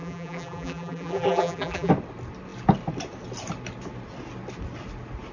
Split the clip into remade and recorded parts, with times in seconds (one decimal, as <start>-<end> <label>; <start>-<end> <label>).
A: 0.0-1.9 remade; 1.9-5.3 recorded